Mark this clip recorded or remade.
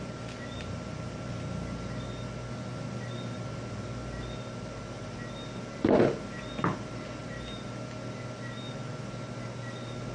recorded